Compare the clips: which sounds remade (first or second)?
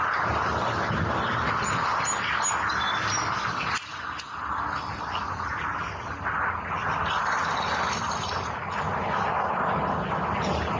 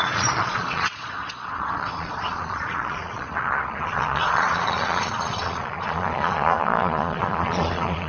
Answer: second